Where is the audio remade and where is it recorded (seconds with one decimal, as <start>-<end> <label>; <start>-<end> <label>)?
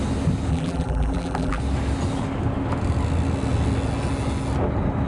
0.0-0.5 recorded; 0.5-1.6 remade; 1.6-5.1 recorded